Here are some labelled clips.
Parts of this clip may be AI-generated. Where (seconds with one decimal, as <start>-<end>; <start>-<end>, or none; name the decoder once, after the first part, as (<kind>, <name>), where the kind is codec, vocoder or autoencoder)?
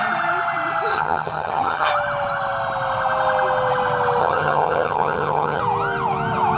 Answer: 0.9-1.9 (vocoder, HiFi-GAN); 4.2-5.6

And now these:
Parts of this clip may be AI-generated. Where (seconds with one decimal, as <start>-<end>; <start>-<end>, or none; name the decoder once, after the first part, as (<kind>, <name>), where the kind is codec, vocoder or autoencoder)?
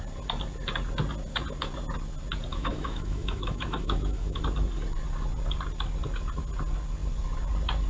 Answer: 2.5-4.4 (autoencoder, DAC-VAE)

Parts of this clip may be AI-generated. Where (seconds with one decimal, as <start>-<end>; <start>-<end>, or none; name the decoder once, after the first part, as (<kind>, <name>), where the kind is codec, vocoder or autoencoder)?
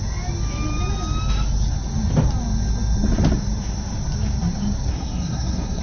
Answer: 4.9-5.8 (codec, SNAC)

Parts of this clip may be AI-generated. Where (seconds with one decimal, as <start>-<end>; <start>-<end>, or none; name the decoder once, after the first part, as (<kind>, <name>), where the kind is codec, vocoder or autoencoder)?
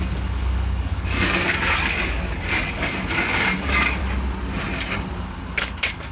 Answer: 0.0-4.0 (codec, DAC); 5.1-6.1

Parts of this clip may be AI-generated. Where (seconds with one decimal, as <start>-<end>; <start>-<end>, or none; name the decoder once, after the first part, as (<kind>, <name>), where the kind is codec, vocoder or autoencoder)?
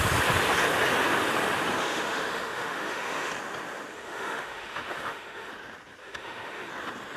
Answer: 1.8-3.3 (autoencoder, DAC-VAE); 3.9-5.5; 6.0-6.7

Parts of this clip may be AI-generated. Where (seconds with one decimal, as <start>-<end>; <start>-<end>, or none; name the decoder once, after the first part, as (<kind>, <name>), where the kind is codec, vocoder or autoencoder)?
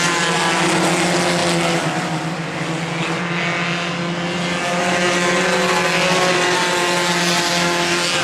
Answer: none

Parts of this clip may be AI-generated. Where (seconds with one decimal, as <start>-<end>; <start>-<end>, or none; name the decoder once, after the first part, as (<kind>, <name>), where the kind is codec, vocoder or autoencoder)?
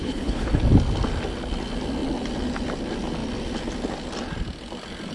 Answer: 0.0-0.6 (codec, HILCodec)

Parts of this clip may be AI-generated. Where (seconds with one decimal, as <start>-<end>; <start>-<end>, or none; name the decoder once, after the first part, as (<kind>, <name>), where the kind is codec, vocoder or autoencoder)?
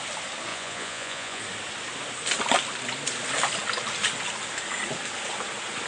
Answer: 0.5-1.4 (vocoder, Vocos)